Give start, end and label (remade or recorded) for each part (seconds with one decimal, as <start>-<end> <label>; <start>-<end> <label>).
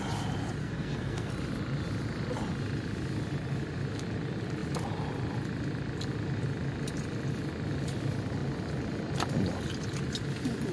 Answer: 0.0-0.6 recorded; 0.6-1.3 remade; 1.3-10.7 recorded